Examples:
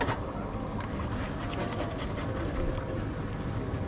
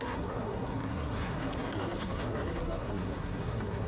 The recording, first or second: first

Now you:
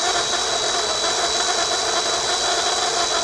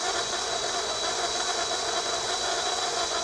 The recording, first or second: first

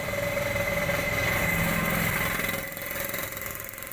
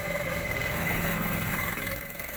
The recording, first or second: first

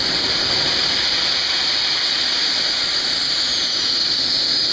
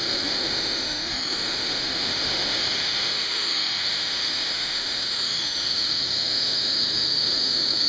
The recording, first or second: first